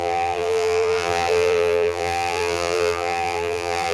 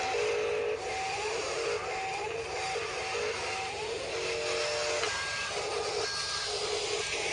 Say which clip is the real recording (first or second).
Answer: second